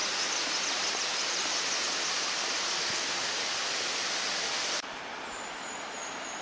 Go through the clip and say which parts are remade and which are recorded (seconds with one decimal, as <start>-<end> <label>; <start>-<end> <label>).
0.0-0.6 recorded; 0.6-1.4 remade; 1.4-4.7 recorded; 4.7-6.4 remade